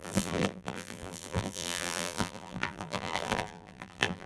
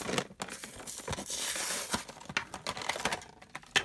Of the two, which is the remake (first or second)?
first